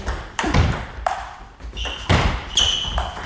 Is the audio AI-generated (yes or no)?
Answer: yes